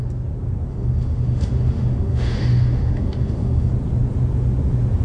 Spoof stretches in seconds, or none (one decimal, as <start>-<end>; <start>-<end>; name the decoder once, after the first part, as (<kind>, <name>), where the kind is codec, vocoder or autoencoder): 0.7-3.7 (autoencoder, DAC-VAE)